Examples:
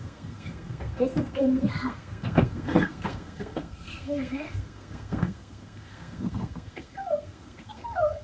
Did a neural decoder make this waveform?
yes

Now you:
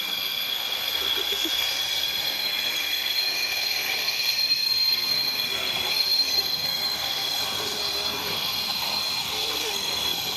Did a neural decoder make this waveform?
yes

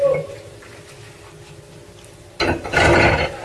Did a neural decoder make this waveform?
no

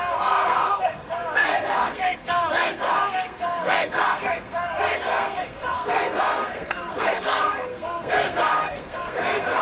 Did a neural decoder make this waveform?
yes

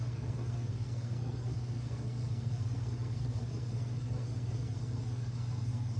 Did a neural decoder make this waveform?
yes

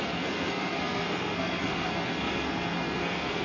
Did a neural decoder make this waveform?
yes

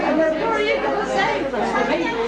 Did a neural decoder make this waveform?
no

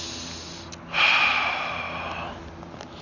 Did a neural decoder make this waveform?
no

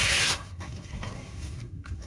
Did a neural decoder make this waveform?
yes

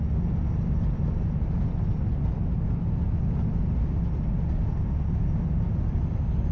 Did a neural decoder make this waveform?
no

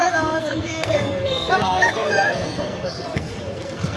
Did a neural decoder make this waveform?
yes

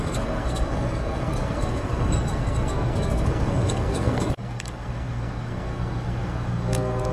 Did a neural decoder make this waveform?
yes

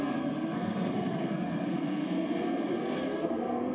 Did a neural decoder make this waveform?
yes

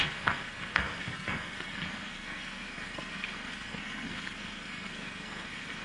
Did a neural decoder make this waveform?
yes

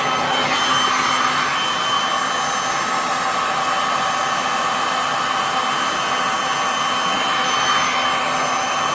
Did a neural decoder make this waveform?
no